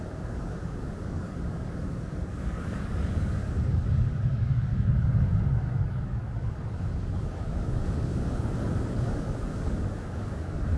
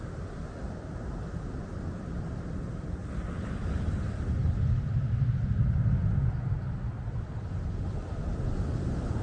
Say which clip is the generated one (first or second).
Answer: first